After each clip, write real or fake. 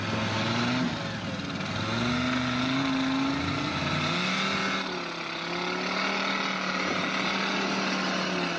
real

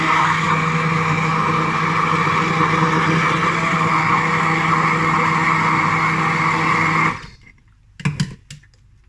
real